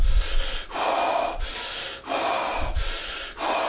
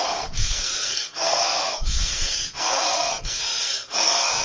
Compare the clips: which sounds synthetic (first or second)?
second